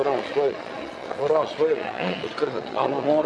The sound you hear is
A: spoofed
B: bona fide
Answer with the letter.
A